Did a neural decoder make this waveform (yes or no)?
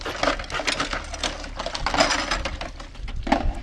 no